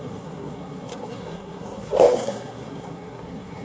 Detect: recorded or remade remade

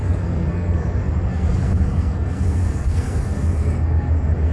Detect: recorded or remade remade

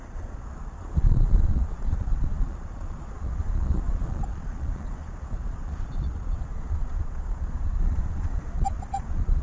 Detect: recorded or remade remade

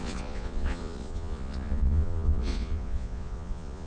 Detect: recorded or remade remade